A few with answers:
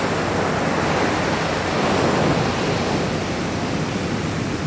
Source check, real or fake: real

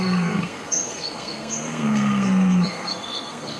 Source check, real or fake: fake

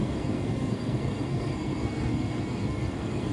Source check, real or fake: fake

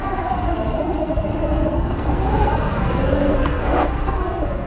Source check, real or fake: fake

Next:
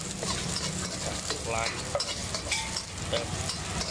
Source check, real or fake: real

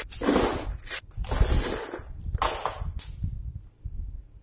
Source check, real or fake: real